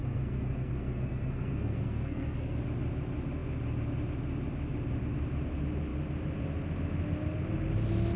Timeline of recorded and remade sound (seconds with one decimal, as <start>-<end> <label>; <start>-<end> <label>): 0.0-2.6 remade; 2.6-8.2 recorded

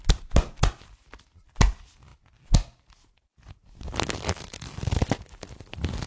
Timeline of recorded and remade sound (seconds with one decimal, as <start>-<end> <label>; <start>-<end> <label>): 0.0-6.1 recorded